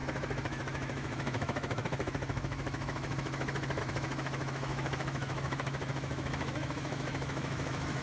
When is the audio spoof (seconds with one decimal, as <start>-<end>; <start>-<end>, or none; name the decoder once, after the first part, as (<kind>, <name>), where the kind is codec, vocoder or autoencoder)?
0.0-8.0 (autoencoder, DAC-VAE)